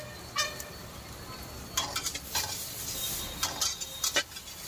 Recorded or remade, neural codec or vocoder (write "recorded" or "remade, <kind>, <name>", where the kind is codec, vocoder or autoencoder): recorded